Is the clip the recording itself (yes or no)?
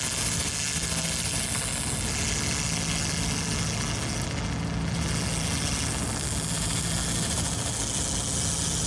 yes